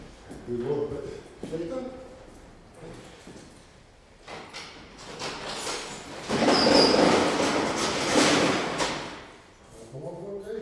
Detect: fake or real real